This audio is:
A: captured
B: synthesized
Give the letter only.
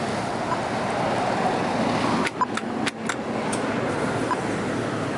A